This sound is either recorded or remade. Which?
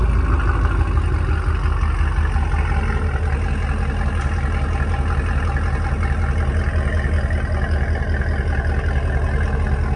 recorded